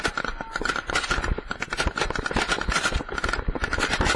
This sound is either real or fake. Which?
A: real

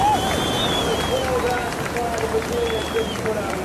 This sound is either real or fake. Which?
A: real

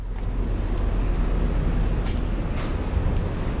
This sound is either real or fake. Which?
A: real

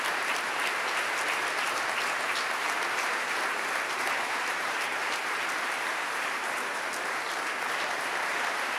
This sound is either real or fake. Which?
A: fake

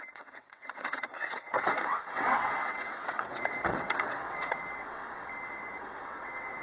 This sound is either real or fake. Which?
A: fake